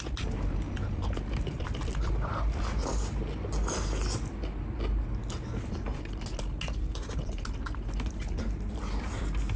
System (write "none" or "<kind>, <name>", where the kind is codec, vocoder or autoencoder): none